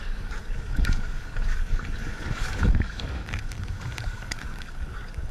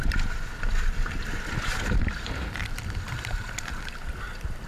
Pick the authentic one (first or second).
second